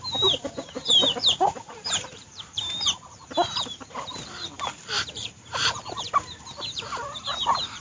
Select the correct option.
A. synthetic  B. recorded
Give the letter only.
A